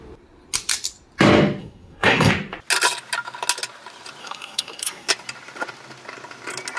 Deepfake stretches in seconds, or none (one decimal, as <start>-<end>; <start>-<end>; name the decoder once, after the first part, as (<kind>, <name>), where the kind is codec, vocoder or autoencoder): 1.6-2.3 (codec, SNAC); 4.2-5.1